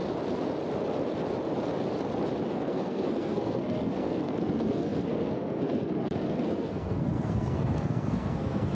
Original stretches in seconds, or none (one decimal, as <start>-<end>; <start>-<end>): 0.0-2.5